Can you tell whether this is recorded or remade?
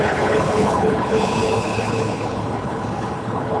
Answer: remade